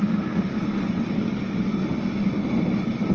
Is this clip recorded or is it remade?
recorded